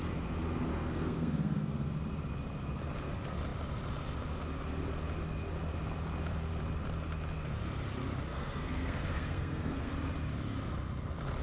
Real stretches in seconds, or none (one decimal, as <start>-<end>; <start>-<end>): 0.0-0.7; 1.9-8.3; 9.9-11.4